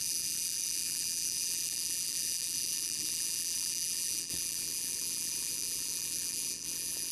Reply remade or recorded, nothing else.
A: remade